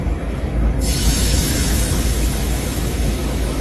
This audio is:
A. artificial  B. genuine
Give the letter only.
A